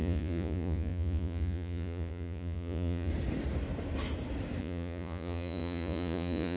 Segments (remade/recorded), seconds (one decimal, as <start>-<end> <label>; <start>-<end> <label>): 0.0-3.1 remade; 3.1-4.6 recorded; 4.6-6.6 remade